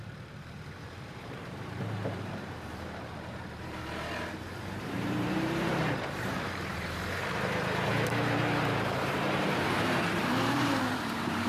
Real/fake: fake